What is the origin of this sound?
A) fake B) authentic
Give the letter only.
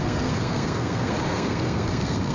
A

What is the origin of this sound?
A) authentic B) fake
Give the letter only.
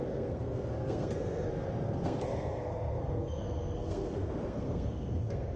B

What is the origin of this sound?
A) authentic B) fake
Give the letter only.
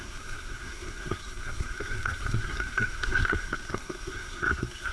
B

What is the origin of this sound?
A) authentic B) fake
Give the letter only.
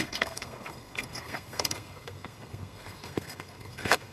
B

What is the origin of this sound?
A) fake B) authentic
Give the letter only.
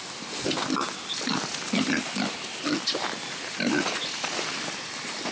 B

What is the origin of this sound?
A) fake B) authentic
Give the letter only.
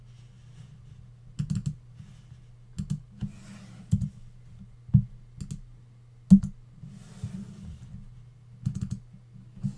B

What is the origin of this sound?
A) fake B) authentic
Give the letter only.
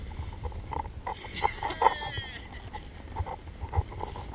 B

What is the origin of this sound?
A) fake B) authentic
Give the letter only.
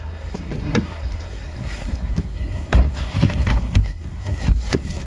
A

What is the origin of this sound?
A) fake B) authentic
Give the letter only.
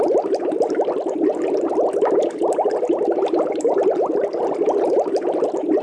B